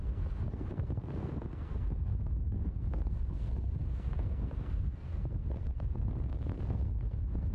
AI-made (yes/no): yes